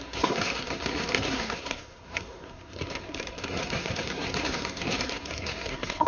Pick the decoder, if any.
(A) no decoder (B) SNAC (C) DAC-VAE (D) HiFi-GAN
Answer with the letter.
B